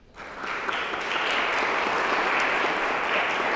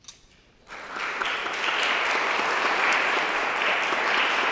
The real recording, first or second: first